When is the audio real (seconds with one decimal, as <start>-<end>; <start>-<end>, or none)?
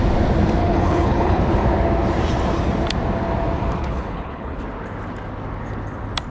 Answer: 0.0-0.6; 1.4-3.8; 4.6-6.3